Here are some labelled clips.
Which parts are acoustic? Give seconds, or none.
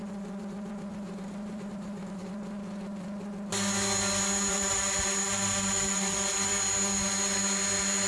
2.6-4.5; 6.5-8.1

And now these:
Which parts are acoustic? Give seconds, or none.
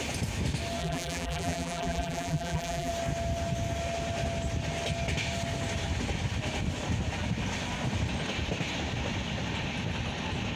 0.0-0.8; 2.9-10.6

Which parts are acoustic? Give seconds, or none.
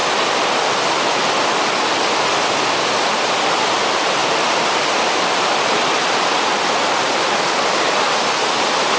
0.8-4.2; 6.6-9.0